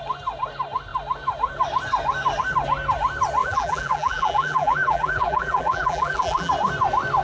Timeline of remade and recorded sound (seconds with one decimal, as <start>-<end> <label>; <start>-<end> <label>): 0.0-3.4 recorded; 3.4-6.5 remade; 6.5-7.2 recorded